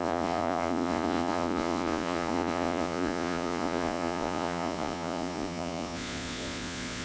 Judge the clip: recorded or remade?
remade